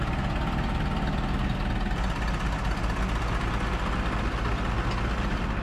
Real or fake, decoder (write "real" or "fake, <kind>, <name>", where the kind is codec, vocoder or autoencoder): real